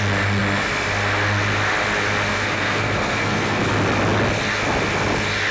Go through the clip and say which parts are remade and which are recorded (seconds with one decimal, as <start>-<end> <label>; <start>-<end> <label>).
0.0-2.3 recorded; 2.3-3.6 remade; 3.6-5.5 recorded